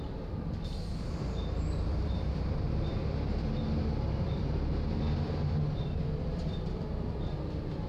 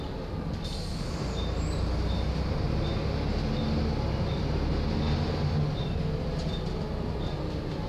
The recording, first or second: second